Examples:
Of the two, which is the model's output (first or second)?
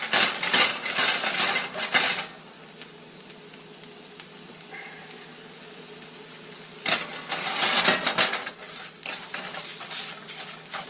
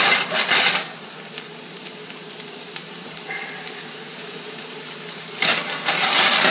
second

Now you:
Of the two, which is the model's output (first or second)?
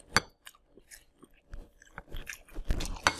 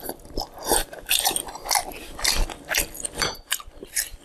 second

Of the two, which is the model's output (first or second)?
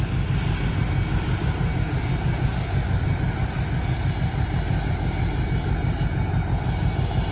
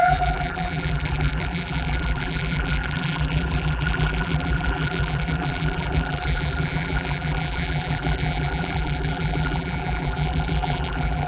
second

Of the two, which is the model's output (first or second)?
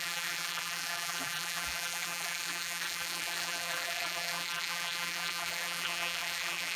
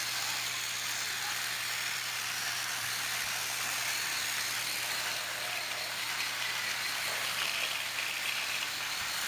first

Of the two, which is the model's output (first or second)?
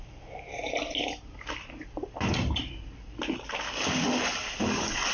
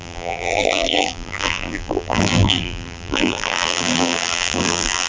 second